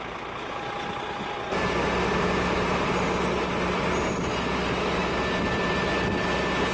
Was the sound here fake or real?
real